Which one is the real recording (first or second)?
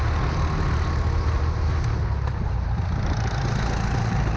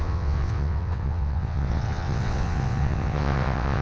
first